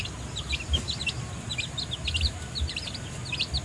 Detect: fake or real real